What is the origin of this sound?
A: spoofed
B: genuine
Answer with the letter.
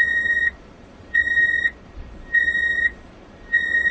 A